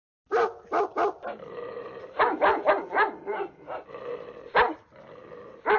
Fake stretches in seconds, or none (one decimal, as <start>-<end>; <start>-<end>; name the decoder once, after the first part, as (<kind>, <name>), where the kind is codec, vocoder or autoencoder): none